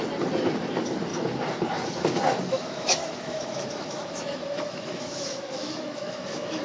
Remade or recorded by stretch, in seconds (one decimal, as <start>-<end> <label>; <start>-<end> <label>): 0.0-2.5 recorded; 2.5-6.6 remade